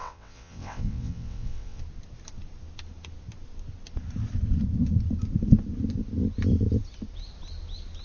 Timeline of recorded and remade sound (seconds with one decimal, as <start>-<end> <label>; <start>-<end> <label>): 0.0-1.8 remade; 1.8-8.0 recorded